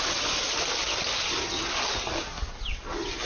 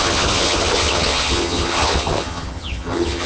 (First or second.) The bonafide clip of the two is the first